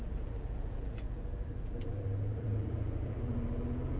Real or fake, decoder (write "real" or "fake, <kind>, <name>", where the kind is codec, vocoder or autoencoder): fake, vocoder, BigVGAN v2